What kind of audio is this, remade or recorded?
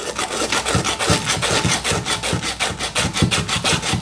recorded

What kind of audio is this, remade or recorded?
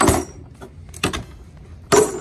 recorded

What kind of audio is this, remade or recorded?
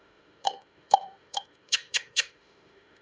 remade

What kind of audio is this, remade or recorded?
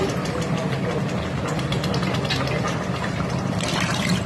recorded